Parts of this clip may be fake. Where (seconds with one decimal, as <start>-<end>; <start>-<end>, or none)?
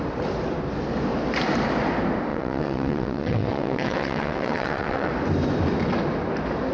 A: 2.3-5.1